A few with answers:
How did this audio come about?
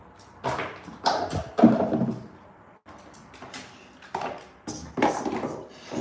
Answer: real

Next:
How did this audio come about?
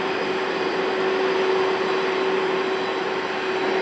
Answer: real